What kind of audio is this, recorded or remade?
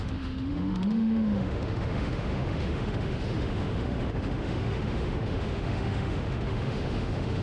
remade